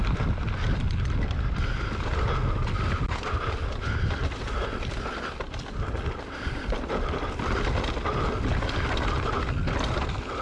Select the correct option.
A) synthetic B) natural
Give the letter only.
B